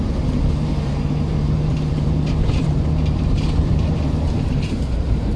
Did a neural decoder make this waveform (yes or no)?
yes